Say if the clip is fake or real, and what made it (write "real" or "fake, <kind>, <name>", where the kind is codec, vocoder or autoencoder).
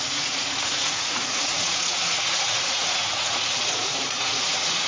fake, vocoder, Vocos